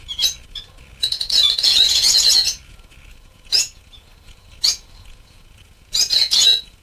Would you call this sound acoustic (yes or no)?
no